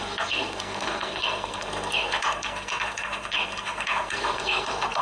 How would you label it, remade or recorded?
remade